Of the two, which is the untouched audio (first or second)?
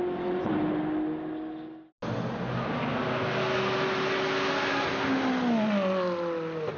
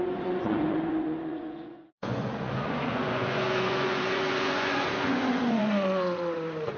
first